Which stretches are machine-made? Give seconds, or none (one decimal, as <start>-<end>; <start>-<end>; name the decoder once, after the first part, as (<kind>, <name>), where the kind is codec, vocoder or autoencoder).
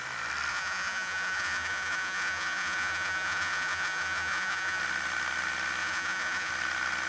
0.5-4.8 (vocoder, Vocos); 5.8-6.5